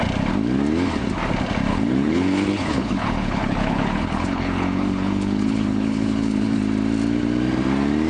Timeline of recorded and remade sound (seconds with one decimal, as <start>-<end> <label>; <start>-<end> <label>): 0.0-1.7 recorded; 1.7-6.6 remade; 6.6-8.1 recorded

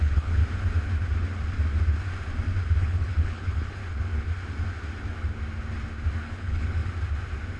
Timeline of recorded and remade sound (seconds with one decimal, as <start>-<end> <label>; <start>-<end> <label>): 0.0-0.4 remade; 0.4-2.8 recorded; 2.8-3.8 remade; 3.8-6.2 recorded; 6.2-6.8 remade; 6.8-7.6 recorded

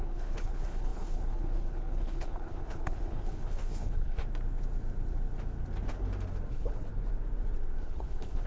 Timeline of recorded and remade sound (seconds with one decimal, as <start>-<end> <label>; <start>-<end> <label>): 0.0-4.2 remade; 4.2-6.5 recorded; 6.5-6.9 remade; 6.9-7.8 recorded; 7.8-8.5 remade

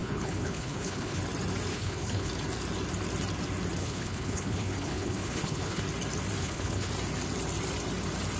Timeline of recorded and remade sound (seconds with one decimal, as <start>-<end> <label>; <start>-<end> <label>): 0.0-1.2 remade; 1.2-1.7 recorded; 1.7-2.3 remade; 2.3-3.8 recorded; 3.8-5.8 remade; 5.8-6.4 recorded; 6.4-6.9 remade; 6.9-8.4 recorded

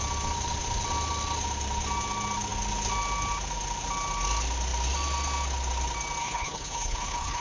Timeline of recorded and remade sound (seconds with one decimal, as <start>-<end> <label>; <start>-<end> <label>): 0.0-6.2 recorded; 6.2-7.4 remade

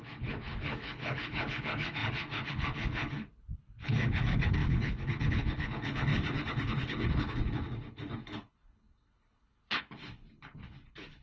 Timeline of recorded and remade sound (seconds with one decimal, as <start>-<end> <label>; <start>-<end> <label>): 0.0-11.2 remade

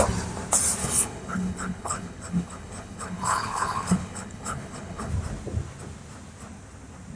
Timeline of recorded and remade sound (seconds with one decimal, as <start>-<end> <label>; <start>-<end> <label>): 0.0-0.8 recorded; 0.8-5.1 remade; 5.1-7.2 recorded